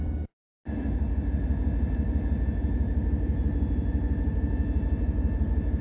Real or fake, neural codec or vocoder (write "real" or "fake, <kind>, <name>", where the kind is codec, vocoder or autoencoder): real